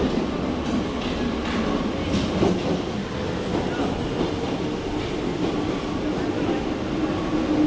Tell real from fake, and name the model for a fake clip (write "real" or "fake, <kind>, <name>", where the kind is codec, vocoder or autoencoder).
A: real